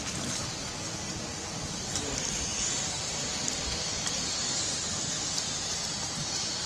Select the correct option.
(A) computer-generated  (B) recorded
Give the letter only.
B